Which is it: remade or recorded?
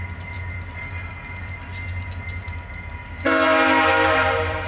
recorded